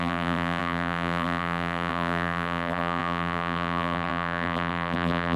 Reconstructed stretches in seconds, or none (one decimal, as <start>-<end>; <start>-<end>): 0.0-5.4